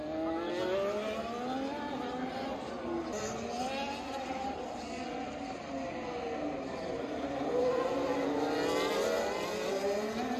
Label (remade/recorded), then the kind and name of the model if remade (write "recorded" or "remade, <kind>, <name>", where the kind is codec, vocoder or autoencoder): recorded